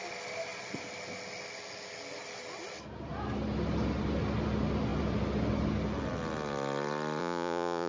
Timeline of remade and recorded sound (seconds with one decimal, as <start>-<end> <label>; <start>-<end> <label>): 0.0-7.2 recorded; 7.2-7.9 remade